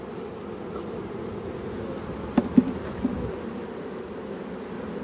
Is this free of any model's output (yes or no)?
yes